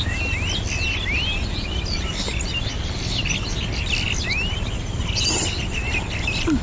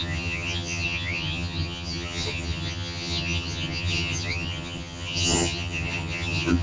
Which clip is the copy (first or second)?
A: second